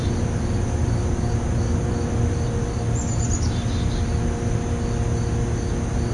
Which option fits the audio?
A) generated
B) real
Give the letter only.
B